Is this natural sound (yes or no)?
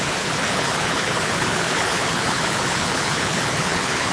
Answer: no